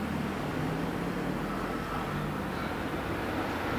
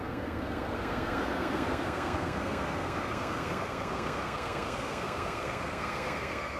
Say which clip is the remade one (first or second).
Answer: second